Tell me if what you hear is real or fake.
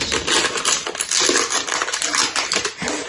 real